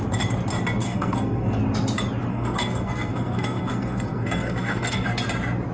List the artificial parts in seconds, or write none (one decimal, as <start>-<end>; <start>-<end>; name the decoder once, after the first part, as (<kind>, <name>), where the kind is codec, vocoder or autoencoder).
0.8-1.6 (codec, SNAC); 2.3-5.1